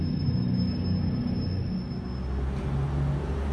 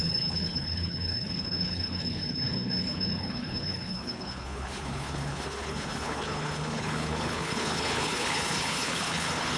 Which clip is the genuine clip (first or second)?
first